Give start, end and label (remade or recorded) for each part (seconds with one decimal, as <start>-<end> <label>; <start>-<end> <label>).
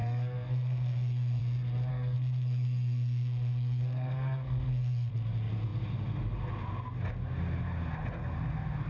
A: 0.0-1.4 remade; 1.4-1.9 recorded; 1.9-5.1 remade; 5.1-8.9 recorded